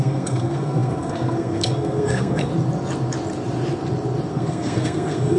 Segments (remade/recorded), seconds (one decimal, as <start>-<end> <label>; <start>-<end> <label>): 0.0-2.5 remade; 2.5-4.3 recorded; 4.3-5.4 remade

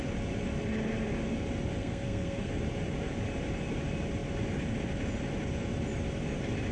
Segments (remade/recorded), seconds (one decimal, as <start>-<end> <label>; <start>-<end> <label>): 0.0-1.8 recorded; 1.8-2.5 remade; 2.5-6.7 recorded

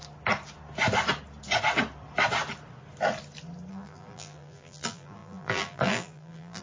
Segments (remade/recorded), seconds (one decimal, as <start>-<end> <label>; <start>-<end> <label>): 0.0-3.7 recorded; 3.7-6.6 remade